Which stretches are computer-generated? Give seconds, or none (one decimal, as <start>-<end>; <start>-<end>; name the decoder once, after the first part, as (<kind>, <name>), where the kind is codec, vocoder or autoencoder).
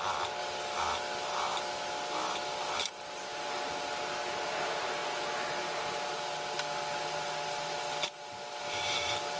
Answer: none